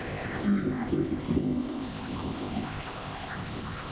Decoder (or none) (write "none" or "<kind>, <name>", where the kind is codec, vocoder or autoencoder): codec, ZipCodec